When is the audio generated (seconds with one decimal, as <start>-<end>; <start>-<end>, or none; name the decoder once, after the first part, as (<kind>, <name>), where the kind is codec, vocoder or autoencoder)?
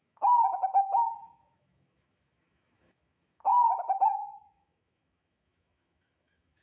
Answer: 0.0-6.6 (autoencoder, DAC-VAE)